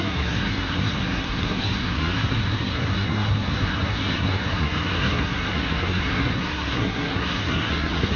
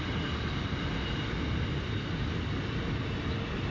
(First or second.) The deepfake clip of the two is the first